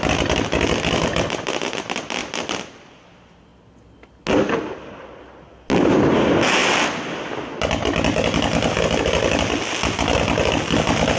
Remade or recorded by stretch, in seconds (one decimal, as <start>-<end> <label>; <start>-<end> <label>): 0.0-11.2 recorded